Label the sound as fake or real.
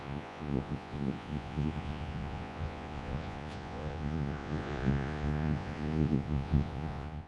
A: fake